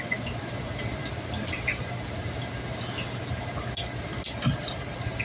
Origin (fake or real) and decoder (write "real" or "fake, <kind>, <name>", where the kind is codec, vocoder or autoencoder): real